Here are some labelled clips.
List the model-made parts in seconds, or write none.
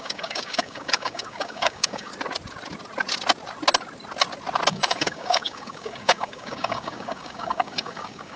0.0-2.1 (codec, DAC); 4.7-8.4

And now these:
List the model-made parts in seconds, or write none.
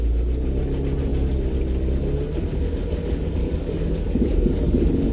3.4-5.1 (codec, DAC)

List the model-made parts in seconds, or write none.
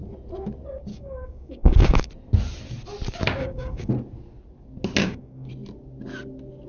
0.9-2.1 (codec, DAC); 3.4-3.9; 5.0-5.5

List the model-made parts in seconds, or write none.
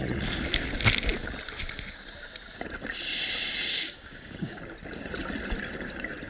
3.7-4.6 (codec, DAC)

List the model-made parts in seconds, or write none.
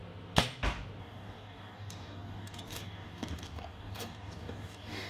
1.0-5.1 (codec, DAC)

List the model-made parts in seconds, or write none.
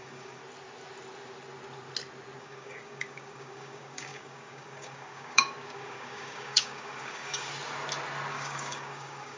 0.0-0.4 (codec, DAC); 2.4-7.5; 8.3-9.4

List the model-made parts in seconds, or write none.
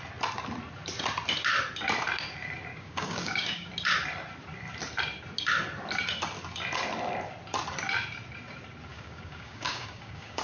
2.7-3.7 (codec, DAC); 8.9-10.4